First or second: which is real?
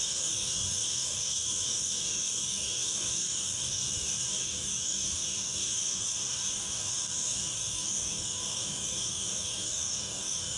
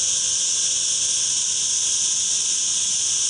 second